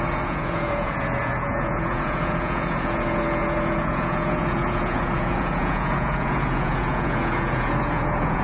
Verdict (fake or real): fake